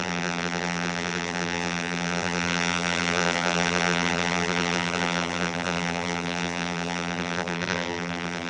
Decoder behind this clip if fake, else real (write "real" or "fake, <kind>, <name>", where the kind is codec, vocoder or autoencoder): fake, vocoder, BigVGAN v2